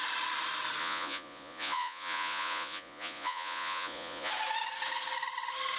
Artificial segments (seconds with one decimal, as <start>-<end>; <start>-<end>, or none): 0.8-4.3